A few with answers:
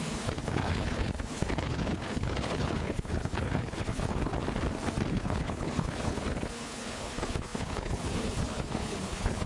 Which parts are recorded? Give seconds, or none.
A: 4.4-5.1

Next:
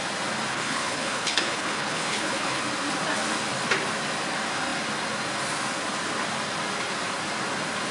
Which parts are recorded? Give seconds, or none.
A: 0.0-0.5; 2.6-7.9

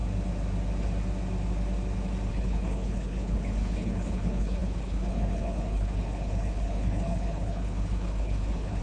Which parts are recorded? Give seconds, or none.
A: 0.0-2.3

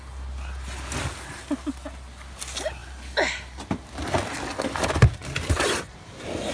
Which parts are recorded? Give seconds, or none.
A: 0.0-6.5

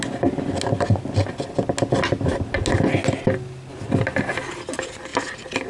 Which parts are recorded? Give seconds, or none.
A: 0.0-5.7

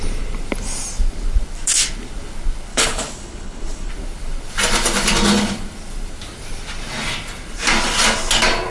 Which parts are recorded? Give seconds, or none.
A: 0.0-2.7; 3.9-8.7